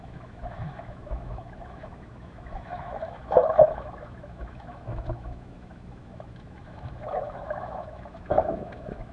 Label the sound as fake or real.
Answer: fake